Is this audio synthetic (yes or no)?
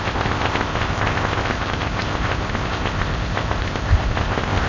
yes